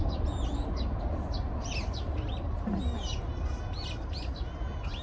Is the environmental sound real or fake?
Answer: real